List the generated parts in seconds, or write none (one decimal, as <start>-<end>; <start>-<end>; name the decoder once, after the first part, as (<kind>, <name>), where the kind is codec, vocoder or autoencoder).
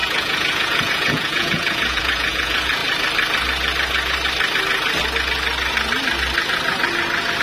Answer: 0.0-2.8 (vocoder, Vocos)